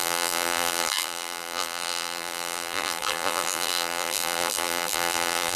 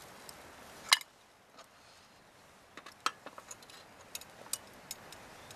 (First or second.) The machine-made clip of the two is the first